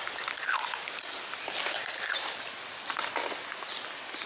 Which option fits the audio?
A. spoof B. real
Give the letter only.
B